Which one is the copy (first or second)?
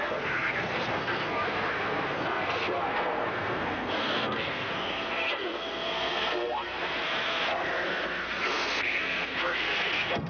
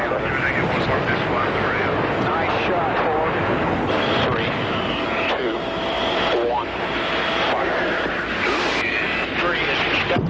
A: first